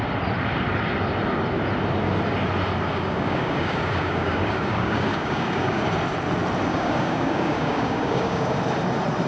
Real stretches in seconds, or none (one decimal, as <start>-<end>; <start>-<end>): 0.0-2.9; 5.8-6.7; 8.6-9.3